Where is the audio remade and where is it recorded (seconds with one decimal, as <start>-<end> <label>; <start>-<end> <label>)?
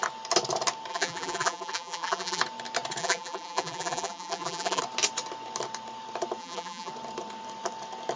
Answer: 0.0-0.9 recorded; 0.9-2.4 remade; 2.4-3.0 recorded; 3.0-4.8 remade; 4.8-6.4 recorded; 6.4-6.9 remade; 6.9-8.2 recorded